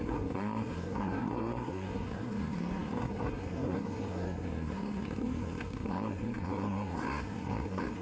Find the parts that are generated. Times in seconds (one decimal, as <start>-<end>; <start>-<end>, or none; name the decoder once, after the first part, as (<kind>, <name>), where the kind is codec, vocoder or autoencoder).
0.0-8.0 (codec, SNAC)

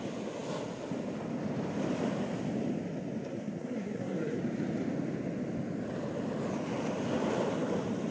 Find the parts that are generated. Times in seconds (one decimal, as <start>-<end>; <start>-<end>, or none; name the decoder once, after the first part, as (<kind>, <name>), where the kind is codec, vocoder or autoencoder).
3.3-4.4 (codec, SNAC)

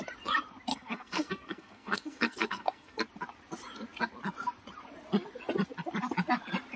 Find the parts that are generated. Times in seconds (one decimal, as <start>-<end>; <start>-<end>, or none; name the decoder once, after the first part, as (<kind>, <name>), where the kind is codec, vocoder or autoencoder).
0.7-3.0 (codec, SNAC)

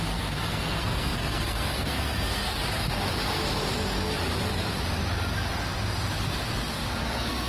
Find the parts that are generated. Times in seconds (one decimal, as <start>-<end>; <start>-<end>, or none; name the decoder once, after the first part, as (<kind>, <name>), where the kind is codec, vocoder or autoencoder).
0.0-2.6 (codec, SNAC); 7.0-7.5